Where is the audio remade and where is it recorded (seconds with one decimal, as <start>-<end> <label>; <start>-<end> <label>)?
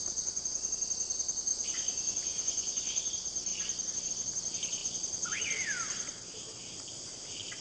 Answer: 0.0-0.7 remade; 0.7-1.5 recorded; 1.5-3.1 remade; 3.1-7.6 recorded